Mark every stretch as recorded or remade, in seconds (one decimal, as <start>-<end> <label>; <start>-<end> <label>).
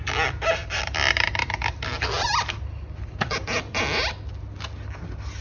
0.0-0.6 recorded; 0.6-3.8 remade; 3.8-5.4 recorded